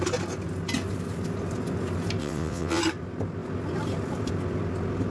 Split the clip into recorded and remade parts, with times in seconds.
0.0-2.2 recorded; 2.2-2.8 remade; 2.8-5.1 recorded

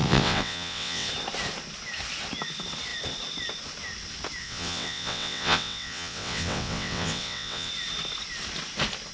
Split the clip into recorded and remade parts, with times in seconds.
0.0-1.1 remade; 1.1-4.4 recorded; 4.4-7.7 remade; 7.7-9.1 recorded

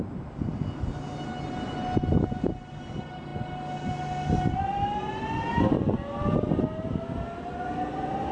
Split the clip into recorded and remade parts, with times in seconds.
0.0-8.3 recorded

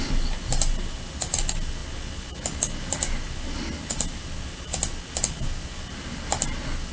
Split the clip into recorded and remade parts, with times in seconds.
0.0-6.9 recorded

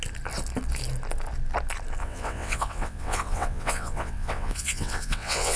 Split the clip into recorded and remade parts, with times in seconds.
0.0-2.0 recorded; 2.0-5.6 remade

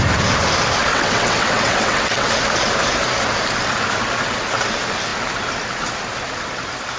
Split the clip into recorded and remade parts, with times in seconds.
0.0-0.9 recorded; 0.9-2.3 remade; 2.3-7.0 recorded